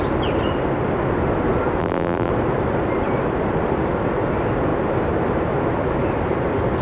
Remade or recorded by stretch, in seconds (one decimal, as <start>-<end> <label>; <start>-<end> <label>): 0.0-1.8 recorded; 1.8-2.3 remade; 2.3-6.8 recorded